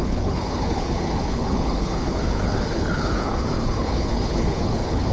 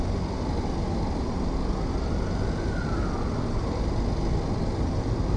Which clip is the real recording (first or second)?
second